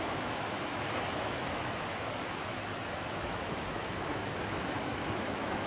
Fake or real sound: fake